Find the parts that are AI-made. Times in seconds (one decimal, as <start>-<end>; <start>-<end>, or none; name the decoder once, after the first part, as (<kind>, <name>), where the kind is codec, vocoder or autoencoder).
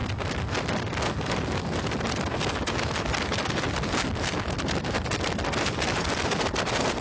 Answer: none